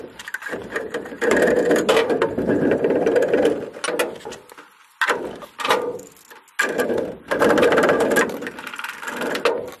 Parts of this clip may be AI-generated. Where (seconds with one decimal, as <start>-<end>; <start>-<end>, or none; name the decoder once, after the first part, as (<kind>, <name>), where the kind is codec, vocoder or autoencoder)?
0.6-1.9 (vocoder, BigVGAN v2)